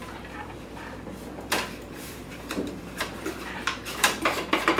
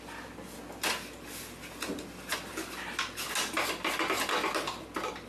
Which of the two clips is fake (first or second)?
first